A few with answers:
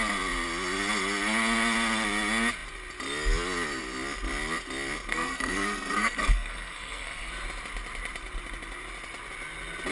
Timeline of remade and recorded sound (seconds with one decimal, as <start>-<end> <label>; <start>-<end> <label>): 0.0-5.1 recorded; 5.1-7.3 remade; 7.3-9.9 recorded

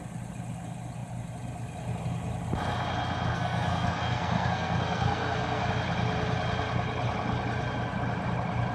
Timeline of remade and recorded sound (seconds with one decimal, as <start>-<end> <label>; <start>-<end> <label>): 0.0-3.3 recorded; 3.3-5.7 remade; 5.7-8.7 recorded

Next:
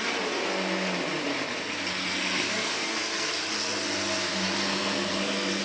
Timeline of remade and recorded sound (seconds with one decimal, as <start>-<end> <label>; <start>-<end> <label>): 0.0-2.0 recorded; 2.0-3.3 remade; 3.3-4.7 recorded; 4.7-5.6 remade